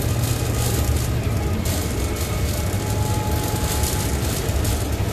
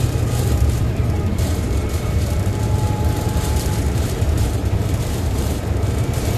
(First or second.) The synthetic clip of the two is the second